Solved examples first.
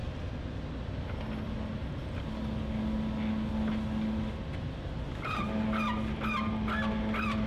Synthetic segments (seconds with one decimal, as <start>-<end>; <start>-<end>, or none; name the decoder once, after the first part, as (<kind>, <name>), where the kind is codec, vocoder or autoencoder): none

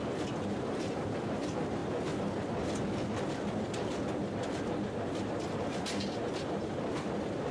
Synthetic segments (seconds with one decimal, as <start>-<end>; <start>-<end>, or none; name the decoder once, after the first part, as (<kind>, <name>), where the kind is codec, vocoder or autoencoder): 0.0-1.8 (vocoder, BigVGAN v2); 5.4-7.5

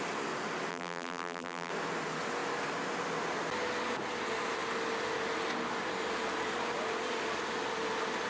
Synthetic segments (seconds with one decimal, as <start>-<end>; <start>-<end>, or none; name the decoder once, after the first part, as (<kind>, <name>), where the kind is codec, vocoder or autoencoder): 0.7-1.7 (vocoder, BigVGAN v2)